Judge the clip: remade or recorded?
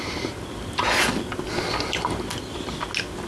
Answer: recorded